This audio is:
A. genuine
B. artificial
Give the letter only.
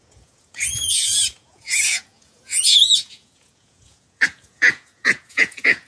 B